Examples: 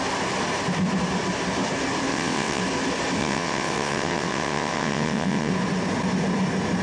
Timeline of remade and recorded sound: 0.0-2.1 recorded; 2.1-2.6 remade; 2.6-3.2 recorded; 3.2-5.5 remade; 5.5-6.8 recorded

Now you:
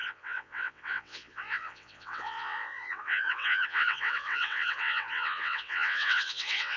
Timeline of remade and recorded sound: 0.0-6.8 remade

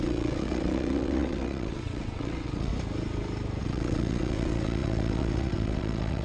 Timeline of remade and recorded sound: 0.0-2.7 remade; 2.7-3.6 recorded; 3.6-6.2 remade